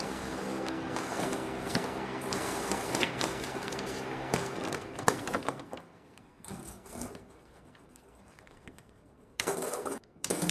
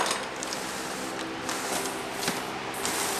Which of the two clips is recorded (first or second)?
second